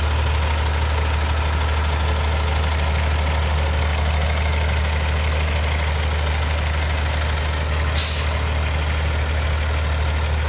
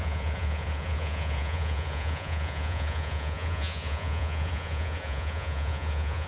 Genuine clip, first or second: first